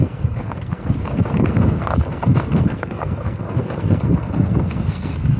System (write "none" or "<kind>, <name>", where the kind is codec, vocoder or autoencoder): codec, SNAC